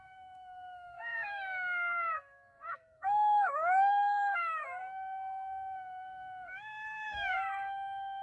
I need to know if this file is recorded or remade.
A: remade